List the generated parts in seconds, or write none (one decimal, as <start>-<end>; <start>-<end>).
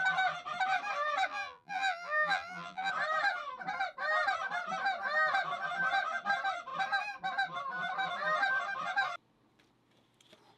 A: 1.3-2.9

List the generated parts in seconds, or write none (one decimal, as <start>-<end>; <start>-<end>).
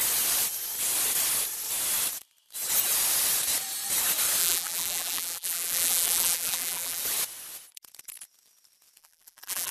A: 4.4-7.0; 9.0-9.7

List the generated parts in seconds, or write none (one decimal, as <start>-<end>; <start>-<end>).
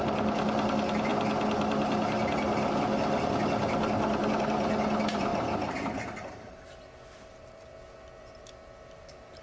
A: none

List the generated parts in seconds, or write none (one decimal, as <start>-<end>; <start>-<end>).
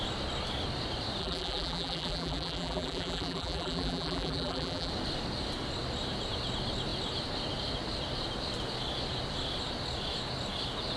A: 1.2-4.9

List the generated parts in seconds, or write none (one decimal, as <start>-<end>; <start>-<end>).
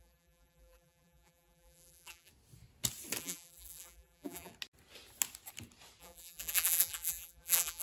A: 0.0-2.3; 3.2-4.5; 6.0-7.8